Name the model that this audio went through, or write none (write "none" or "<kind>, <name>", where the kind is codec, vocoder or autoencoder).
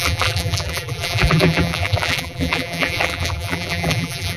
vocoder, BigVGAN v2